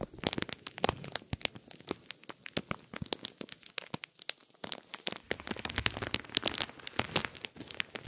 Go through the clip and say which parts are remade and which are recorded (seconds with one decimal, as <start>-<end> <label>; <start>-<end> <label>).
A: 0.0-8.1 recorded